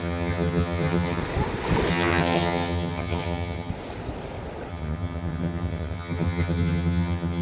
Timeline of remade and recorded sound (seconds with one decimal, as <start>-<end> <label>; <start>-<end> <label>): 0.0-1.2 remade; 1.2-1.9 recorded; 1.9-3.7 remade; 3.7-4.7 recorded; 4.7-7.4 remade